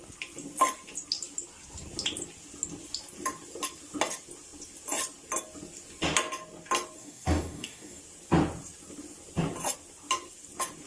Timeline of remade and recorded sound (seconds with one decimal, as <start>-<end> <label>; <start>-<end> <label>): 0.0-7.0 recorded; 7.0-8.0 remade; 8.0-10.9 recorded